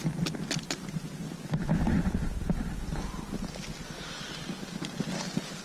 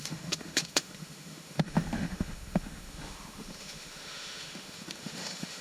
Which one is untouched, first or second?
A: first